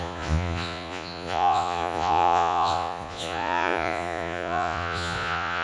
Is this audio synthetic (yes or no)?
yes